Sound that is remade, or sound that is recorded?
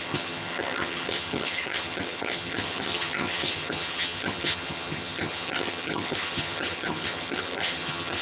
remade